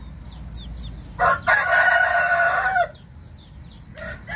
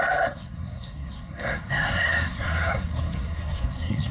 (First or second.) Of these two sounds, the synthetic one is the second